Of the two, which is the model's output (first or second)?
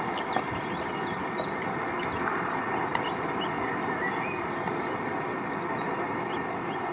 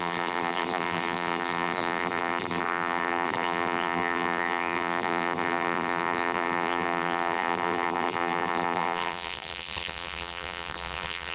second